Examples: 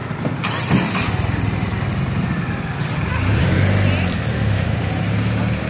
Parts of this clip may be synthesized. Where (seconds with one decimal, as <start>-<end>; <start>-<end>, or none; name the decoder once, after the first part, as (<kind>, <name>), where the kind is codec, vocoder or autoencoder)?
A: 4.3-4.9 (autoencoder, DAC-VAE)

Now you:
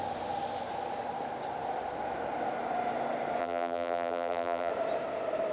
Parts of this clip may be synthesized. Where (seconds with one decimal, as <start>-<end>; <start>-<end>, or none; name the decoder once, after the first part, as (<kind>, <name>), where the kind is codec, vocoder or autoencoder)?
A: 3.4-4.7 (vocoder, BigVGAN v2)

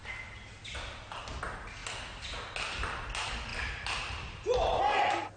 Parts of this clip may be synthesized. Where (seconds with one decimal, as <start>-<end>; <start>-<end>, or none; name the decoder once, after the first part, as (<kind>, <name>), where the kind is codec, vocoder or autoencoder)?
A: 3.5-4.8 (vocoder, BigVGAN v2)

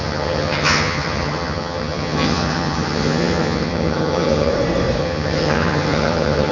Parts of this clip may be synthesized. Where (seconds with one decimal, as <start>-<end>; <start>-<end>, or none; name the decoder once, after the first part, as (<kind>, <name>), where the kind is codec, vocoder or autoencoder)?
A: 0.0-4.5 (vocoder, HiFi-GAN); 5.0-6.5